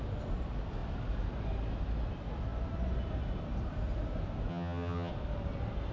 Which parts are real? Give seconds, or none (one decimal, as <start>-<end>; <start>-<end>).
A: 0.0-4.5; 5.1-5.9